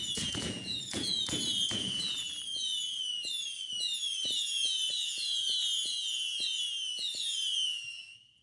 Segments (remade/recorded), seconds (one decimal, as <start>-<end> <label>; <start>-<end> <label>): 0.0-3.3 remade; 3.3-4.1 recorded; 4.1-8.4 remade